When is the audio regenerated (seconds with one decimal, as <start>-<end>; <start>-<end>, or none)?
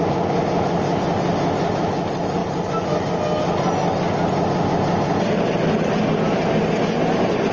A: none